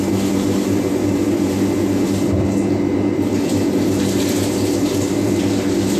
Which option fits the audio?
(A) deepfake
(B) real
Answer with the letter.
B